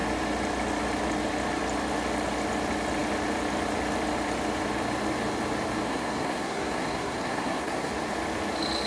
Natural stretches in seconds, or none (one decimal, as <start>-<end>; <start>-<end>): 0.0-5.9; 7.9-8.9

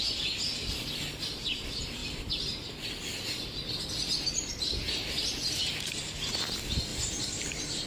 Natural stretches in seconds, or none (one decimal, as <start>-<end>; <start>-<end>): 0.0-6.9

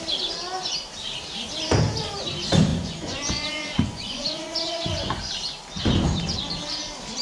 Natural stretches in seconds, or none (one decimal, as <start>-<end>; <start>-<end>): 0.0-2.7; 5.3-7.2

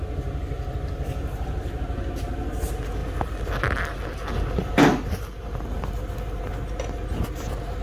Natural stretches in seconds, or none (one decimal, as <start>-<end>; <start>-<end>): 0.0-7.8

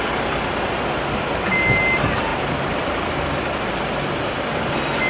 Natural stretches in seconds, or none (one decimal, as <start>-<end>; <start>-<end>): 0.0-5.1

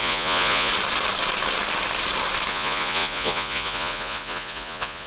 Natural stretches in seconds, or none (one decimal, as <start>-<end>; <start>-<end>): 0.7-2.5

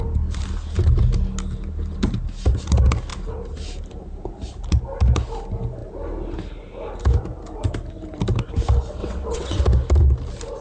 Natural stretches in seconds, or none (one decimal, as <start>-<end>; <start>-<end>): 0.0-9.0; 9.6-10.6